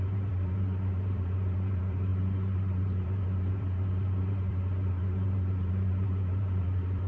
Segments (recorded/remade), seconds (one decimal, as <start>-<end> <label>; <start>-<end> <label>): 0.0-7.1 remade